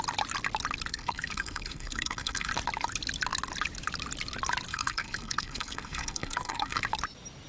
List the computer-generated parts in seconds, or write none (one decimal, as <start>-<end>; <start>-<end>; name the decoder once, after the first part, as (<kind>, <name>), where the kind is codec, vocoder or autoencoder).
0.9-2.5 (codec, SNAC); 4.7-6.8